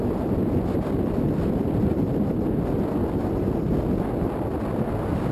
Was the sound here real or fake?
real